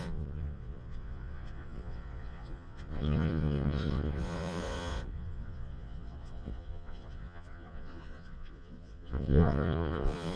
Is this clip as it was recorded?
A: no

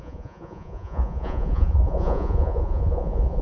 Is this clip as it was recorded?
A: no